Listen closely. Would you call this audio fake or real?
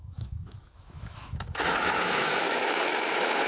fake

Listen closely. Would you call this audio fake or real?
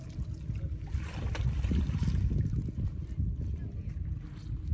real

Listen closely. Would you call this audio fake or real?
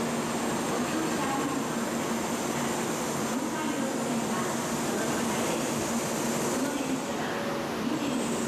real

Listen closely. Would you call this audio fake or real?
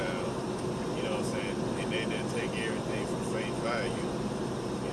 real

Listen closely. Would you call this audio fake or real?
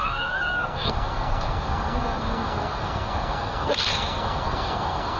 fake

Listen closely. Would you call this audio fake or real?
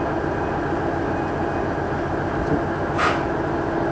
real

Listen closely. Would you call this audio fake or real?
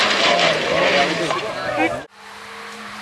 real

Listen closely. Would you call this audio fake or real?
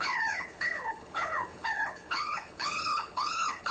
fake